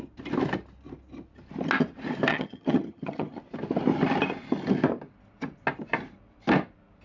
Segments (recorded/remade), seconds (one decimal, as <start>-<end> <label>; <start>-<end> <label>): 0.0-2.3 recorded; 2.3-3.4 remade; 3.4-7.0 recorded